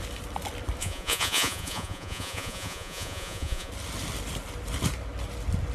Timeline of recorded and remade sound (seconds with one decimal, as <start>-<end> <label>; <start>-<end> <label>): 0.0-0.8 recorded; 0.8-3.7 remade; 3.7-5.7 recorded